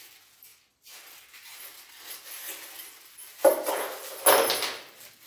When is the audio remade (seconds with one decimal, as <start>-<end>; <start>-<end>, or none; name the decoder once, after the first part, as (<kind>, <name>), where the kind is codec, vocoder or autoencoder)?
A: 0.5-2.7 (vocoder, BigVGAN v2)